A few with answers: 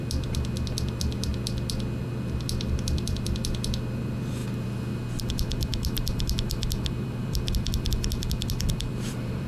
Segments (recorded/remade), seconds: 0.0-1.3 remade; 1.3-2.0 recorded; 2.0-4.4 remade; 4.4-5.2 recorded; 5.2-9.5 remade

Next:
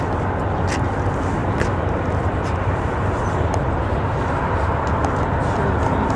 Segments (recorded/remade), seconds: 0.0-1.4 recorded; 1.4-5.1 remade; 5.1-6.2 recorded